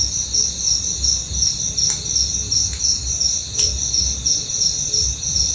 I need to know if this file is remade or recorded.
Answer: recorded